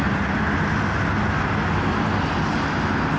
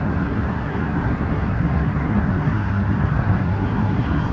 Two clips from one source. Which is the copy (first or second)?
second